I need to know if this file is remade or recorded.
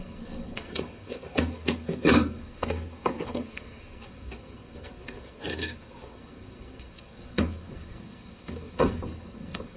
remade